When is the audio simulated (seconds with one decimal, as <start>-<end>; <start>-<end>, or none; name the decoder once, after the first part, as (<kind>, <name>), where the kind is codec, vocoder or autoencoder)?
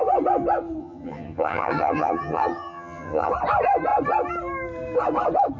0.8-3.3 (vocoder, HiFi-GAN)